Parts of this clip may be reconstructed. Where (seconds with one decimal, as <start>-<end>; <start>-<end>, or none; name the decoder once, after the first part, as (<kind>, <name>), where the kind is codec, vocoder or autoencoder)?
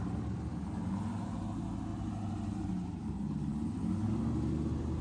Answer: 0.5-1.5 (vocoder, BigVGAN v2); 1.9-3.8